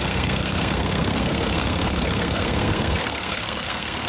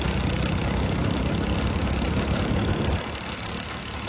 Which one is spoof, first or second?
first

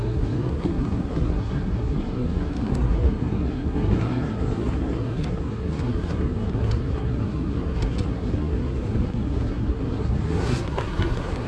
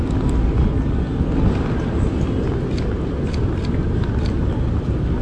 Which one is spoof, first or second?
first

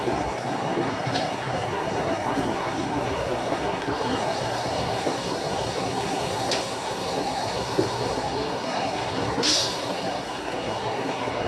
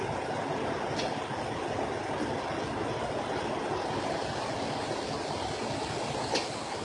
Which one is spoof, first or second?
first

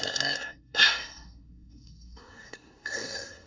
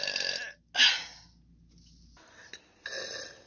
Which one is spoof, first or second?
first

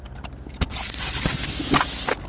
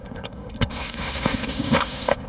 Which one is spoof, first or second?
second